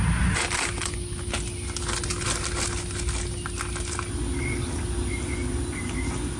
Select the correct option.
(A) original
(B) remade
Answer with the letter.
A